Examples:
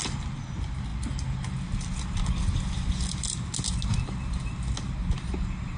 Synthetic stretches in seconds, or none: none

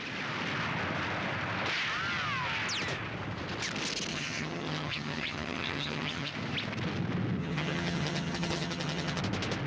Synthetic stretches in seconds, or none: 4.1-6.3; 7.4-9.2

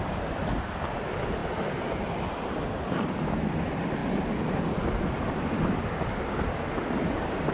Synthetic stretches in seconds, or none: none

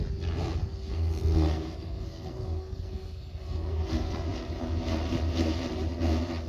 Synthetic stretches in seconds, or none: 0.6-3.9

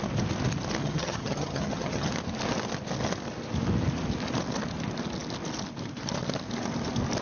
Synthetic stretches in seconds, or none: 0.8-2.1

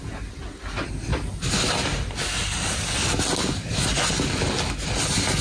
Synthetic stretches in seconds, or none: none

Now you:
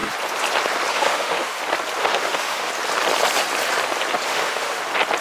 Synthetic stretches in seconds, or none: 0.9-1.6; 2.0-2.7; 4.3-4.8